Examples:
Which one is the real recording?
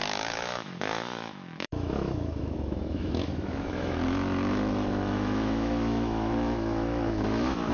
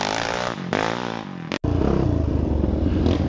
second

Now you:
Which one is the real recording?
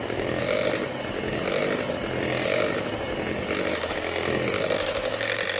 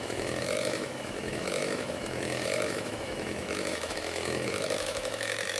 first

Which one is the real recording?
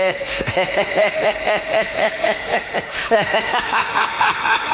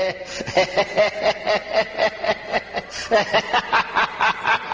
second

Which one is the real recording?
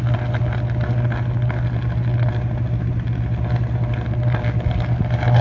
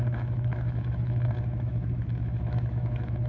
first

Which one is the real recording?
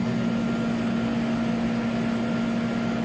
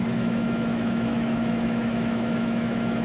first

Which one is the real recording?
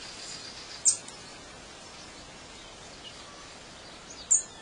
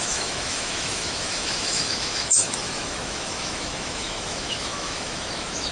first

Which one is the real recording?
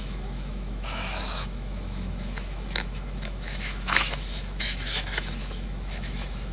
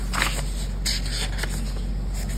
second